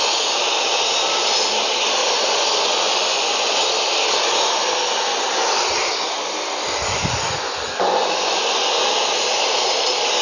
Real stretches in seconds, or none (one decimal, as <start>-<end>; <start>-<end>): 0.0-2.0; 3.5-6.9; 8.9-10.2